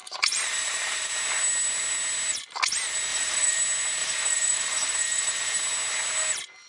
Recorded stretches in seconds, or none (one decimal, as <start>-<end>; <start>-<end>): 1.1-3.1; 3.6-4.0; 5.6-6.7